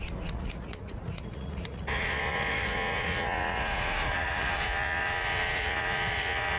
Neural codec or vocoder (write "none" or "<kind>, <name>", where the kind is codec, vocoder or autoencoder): vocoder, Vocos